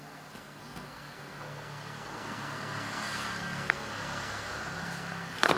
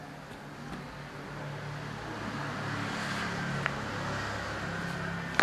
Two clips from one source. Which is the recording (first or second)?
second